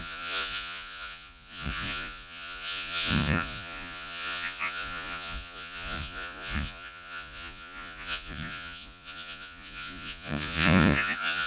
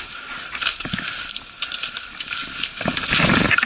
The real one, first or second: second